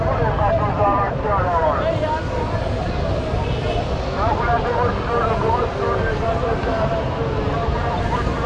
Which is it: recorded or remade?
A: recorded